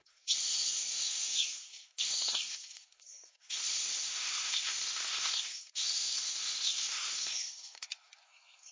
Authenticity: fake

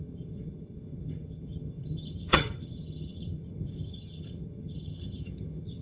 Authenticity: fake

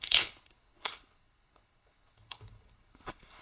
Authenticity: fake